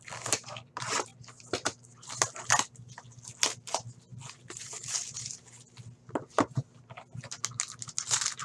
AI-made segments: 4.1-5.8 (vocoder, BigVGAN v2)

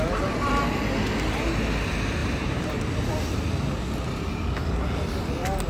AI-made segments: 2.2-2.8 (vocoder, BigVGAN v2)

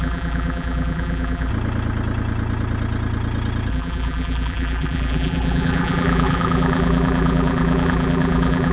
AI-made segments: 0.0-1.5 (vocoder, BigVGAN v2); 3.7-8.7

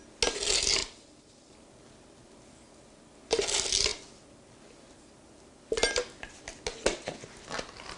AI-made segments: none

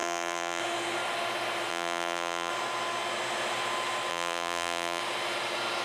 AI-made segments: 0.0-0.6 (vocoder, BigVGAN v2); 1.7-2.5; 4.1-5.0

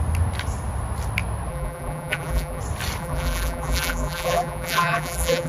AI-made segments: 1.5-2.6 (vocoder, BigVGAN v2); 3.0-5.5

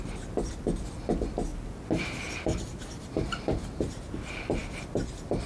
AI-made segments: 1.5-4.1 (vocoder, BigVGAN v2)